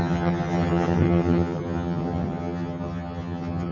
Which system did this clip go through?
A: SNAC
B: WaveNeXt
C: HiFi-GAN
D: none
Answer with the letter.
C